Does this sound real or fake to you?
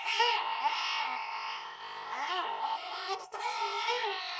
fake